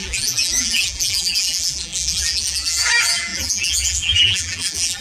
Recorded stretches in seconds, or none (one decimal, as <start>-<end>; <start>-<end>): none